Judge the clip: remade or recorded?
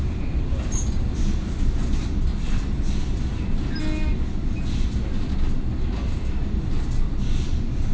recorded